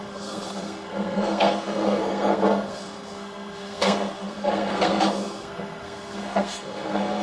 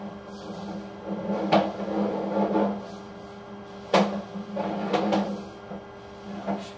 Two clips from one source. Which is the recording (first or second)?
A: second